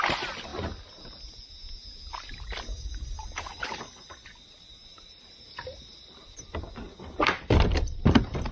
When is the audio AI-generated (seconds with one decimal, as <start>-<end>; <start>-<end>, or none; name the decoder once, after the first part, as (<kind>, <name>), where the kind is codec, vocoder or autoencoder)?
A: none